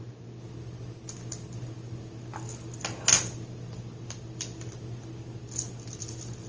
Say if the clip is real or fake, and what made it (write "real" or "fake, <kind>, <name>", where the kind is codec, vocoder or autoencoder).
real